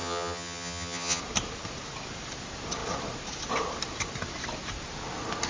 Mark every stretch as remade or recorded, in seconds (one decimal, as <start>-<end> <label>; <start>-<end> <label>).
0.0-1.2 remade; 1.2-5.5 recorded